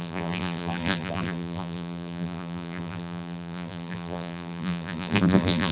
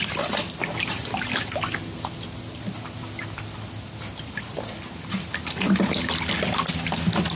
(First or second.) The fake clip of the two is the first